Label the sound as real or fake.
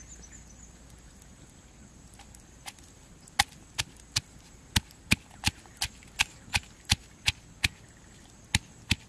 real